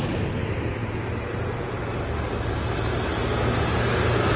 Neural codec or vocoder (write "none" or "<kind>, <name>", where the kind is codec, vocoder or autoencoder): none